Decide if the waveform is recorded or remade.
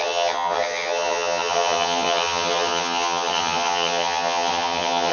remade